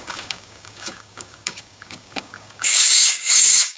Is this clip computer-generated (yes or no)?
yes